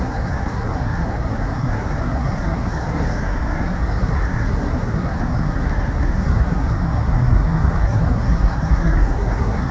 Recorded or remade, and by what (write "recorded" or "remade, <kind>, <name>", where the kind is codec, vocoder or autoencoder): remade, codec, SNAC